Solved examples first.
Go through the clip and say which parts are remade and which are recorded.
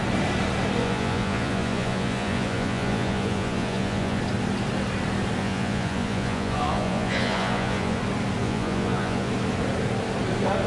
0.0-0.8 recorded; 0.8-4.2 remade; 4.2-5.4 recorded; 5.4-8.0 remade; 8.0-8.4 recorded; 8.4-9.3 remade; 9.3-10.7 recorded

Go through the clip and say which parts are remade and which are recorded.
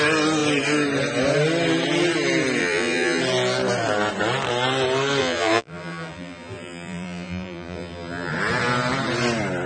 0.0-2.6 recorded; 2.6-3.2 remade; 3.2-5.2 recorded; 5.2-8.3 remade; 8.3-9.7 recorded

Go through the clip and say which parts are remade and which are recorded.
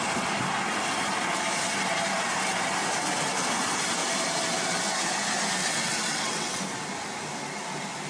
0.0-5.6 recorded; 5.6-6.6 remade; 6.6-8.1 recorded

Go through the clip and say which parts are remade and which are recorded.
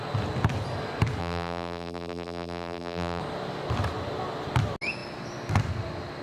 0.0-1.2 recorded; 1.2-3.2 remade; 3.2-6.2 recorded